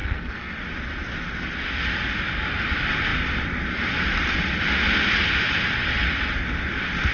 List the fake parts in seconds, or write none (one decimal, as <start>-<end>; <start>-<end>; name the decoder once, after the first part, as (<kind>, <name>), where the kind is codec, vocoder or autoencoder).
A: 0.0-0.6 (codec, SNAC)